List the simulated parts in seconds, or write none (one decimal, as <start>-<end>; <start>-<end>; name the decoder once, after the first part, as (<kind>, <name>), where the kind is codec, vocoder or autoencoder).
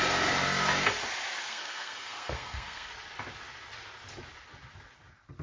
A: 1.4-2.9 (codec, SNAC)